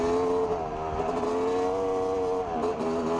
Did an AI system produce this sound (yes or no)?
no